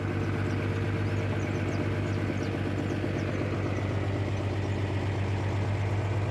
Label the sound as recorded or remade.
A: recorded